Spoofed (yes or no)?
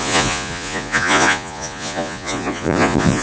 yes